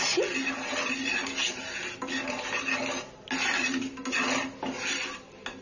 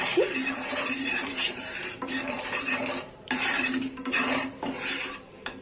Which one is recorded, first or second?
first